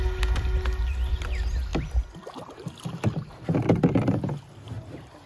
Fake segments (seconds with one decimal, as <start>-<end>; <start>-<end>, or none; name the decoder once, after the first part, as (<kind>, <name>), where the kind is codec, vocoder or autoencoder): none